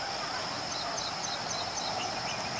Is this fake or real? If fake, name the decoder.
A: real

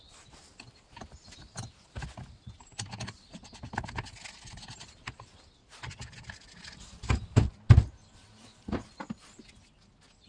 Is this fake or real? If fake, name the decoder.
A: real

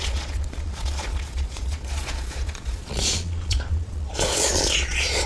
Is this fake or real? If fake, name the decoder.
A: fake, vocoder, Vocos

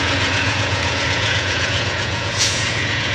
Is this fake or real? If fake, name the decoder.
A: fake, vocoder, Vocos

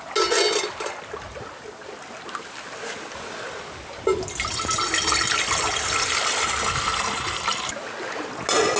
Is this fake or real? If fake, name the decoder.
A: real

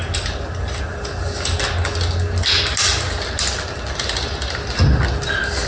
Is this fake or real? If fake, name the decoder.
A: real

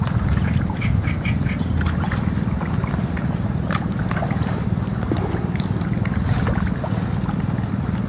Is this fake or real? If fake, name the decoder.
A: real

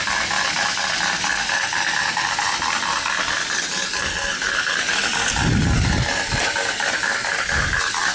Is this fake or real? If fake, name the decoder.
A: real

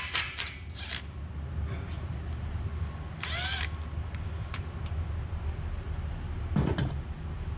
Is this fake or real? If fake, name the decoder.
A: real